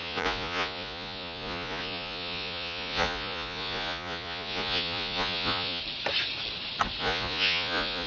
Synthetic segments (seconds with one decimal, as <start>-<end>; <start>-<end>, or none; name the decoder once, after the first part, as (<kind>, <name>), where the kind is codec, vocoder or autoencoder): 0.0-5.8 (vocoder, Vocos); 7.0-8.1